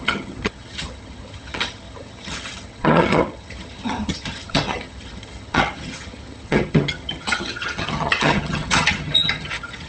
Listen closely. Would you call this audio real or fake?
fake